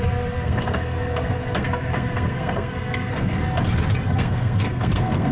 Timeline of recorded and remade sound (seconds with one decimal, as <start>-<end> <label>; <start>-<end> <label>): 0.0-3.4 remade; 3.4-4.1 recorded; 4.1-5.3 remade